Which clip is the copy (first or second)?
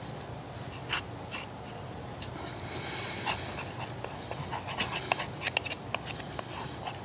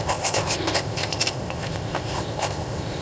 second